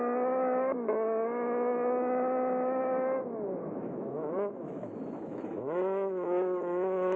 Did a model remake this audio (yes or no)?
yes